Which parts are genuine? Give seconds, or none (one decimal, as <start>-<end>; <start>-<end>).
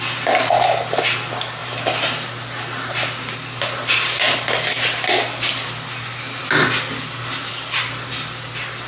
0.0-8.9